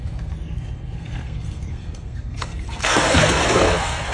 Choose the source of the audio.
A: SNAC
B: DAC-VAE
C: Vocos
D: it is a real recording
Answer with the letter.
A